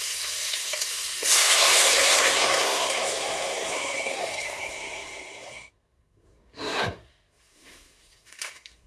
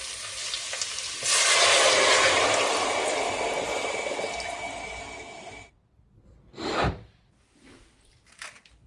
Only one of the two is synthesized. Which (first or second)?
first